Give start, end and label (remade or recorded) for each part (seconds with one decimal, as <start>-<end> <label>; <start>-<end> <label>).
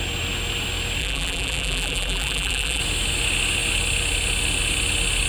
0.0-1.0 recorded; 1.0-2.8 remade; 2.8-5.3 recorded